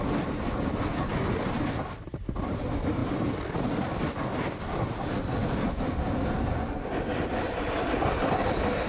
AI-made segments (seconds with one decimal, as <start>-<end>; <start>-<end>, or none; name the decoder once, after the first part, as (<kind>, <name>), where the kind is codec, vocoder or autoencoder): none